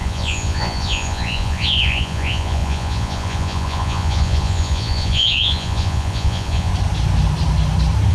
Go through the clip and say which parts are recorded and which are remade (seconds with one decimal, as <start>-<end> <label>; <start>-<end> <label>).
0.0-6.7 remade; 6.7-8.1 recorded